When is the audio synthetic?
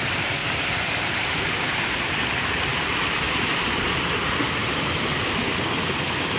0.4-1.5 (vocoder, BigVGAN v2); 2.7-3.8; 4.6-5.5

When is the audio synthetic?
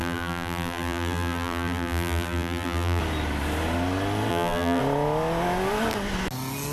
0.0-3.0 (vocoder, BigVGAN v2); 4.3-4.8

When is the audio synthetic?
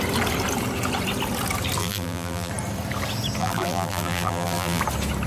1.8-2.5 (vocoder, BigVGAN v2); 3.4-4.8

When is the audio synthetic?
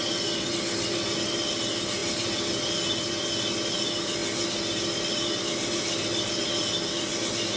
none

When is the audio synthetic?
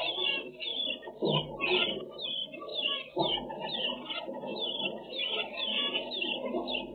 0.7-1.4 (vocoder, BigVGAN v2)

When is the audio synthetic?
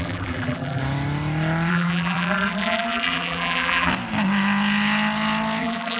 0.0-0.8 (vocoder, BigVGAN v2); 1.7-3.9; 5.6-6.0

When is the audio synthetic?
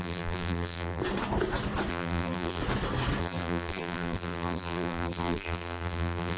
0.0-1.0 (vocoder, BigVGAN v2); 1.9-2.6; 3.2-6.4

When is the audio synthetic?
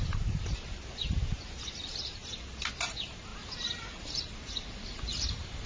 0.0-2.2 (vocoder, BigVGAN v2); 2.9-3.3; 4.2-5.7